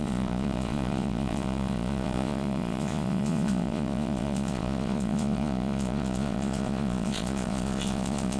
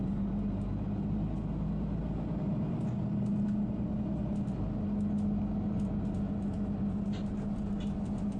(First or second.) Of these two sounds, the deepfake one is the first